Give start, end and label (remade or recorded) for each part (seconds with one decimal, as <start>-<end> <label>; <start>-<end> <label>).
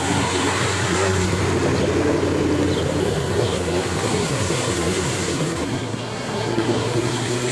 0.0-1.4 remade; 1.4-3.0 recorded; 3.0-7.5 remade